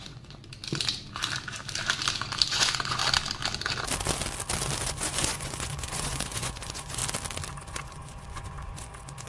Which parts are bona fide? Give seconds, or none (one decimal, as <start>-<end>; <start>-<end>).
0.4-2.5; 3.0-4.8; 7.0-7.6